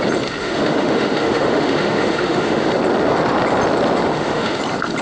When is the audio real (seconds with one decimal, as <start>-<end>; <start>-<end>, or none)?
0.0-0.4; 2.7-4.1; 4.6-5.0